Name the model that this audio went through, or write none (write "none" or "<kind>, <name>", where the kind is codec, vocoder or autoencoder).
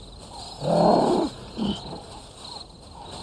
none